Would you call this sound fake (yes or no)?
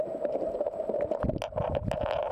no